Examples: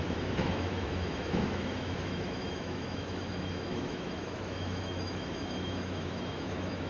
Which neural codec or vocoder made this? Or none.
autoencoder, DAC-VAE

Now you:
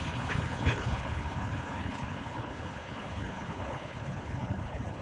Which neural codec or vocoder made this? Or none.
codec, HILCodec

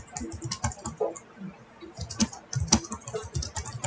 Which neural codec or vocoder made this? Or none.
none